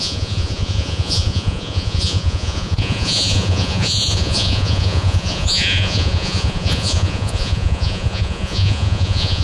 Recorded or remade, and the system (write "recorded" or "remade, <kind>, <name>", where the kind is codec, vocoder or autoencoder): remade, vocoder, Vocos